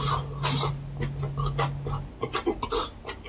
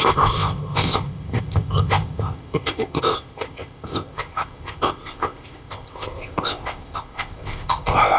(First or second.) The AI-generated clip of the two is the second